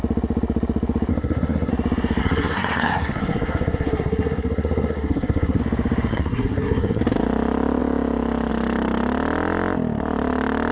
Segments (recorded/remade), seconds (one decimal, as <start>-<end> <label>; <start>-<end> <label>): 0.0-1.1 recorded; 1.1-1.7 remade; 1.7-2.2 recorded; 2.2-5.6 remade; 5.6-6.1 recorded; 6.1-7.0 remade; 7.0-10.7 recorded